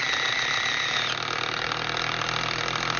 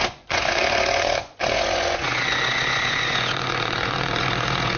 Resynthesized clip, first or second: second